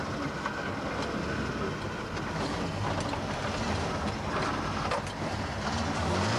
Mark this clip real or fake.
real